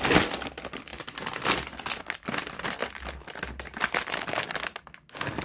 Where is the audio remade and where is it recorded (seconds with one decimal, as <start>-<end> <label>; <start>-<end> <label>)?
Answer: 0.0-5.4 recorded